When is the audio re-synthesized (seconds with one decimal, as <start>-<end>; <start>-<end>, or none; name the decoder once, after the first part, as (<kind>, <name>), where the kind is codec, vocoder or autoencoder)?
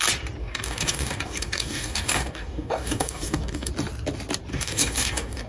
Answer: 0.4-3.7 (codec, DAC); 4.5-5.5